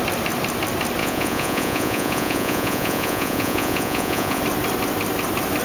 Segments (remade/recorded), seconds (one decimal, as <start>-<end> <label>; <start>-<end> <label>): 0.0-1.0 recorded; 1.0-4.4 remade; 4.4-5.6 recorded